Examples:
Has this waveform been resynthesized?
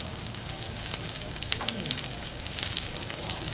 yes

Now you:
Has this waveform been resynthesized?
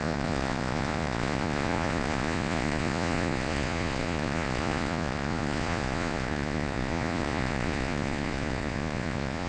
yes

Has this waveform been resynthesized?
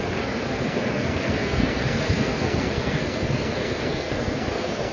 yes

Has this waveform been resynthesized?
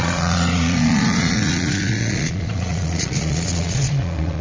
yes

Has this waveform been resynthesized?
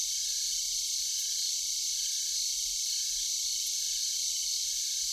yes